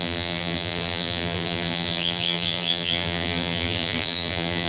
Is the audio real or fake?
fake